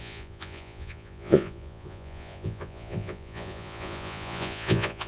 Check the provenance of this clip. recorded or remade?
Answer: remade